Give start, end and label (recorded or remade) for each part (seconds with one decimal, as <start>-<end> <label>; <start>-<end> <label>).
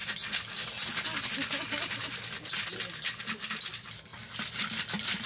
0.0-5.3 recorded